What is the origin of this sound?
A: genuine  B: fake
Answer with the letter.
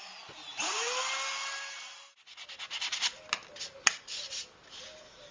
A